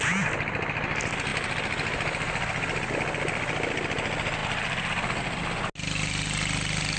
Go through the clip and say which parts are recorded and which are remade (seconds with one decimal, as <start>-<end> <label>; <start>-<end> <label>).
0.0-7.0 recorded